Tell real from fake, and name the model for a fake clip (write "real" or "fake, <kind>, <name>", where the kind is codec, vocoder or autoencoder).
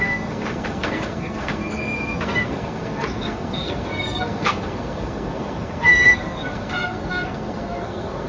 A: fake, codec, SNAC